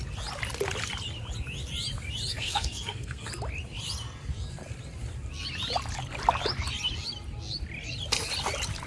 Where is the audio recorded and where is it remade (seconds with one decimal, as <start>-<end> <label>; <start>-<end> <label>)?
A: 0.0-2.3 recorded; 2.3-3.3 remade; 3.3-8.9 recorded